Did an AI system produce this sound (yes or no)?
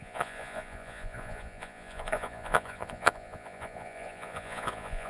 yes